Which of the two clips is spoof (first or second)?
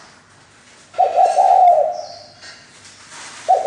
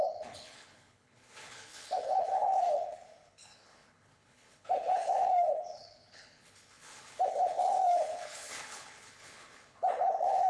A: second